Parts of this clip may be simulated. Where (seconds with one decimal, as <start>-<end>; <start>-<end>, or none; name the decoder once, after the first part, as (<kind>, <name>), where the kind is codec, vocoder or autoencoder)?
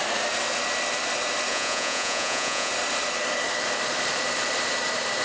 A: 1.5-2.7 (vocoder, Vocos)